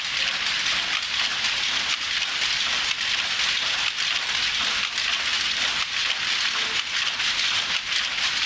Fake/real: real